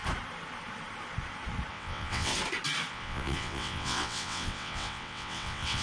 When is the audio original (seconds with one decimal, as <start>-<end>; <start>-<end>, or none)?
0.0-1.7; 2.3-2.9